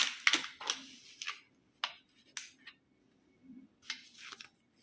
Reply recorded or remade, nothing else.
recorded